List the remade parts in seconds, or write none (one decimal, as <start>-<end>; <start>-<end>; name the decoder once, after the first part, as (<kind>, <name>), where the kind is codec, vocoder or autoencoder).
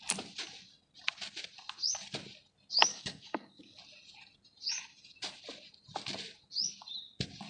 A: 2.9-3.8 (codec, DAC)